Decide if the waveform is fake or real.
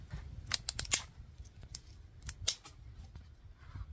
real